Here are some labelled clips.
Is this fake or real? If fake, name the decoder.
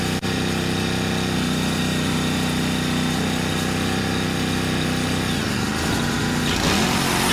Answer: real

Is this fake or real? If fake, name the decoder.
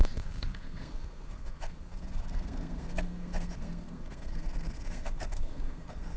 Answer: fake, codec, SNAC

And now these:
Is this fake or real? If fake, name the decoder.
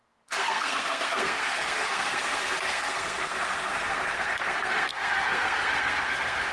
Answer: fake, codec, SNAC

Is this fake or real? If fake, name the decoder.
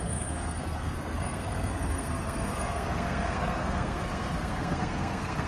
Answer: fake, codec, SNAC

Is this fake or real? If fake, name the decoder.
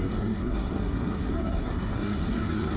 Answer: fake, codec, SNAC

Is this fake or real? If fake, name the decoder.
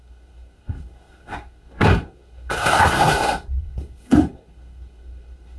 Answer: fake, codec, SNAC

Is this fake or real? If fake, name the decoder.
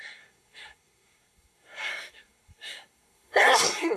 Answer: fake, codec, SNAC